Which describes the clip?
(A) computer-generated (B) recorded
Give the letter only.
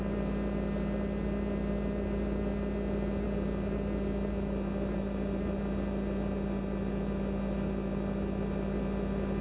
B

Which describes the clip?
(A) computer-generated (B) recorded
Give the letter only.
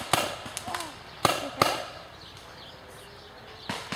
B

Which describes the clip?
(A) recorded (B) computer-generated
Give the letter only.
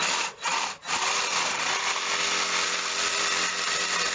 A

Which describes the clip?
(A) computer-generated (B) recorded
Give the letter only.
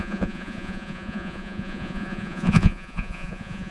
A